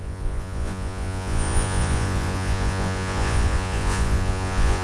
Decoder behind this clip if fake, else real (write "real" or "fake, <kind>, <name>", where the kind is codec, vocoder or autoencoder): fake, vocoder, Vocos